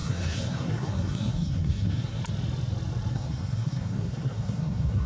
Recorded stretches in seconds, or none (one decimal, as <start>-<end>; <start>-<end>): 2.2-3.1